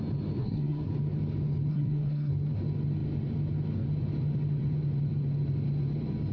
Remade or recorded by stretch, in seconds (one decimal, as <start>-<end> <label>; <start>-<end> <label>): 0.0-0.4 recorded; 0.4-0.9 remade; 0.9-1.7 recorded; 1.7-2.3 remade; 2.3-6.3 recorded